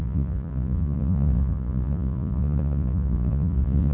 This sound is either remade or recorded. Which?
remade